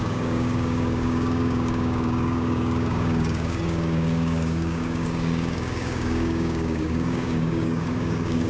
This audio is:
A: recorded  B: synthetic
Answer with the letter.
B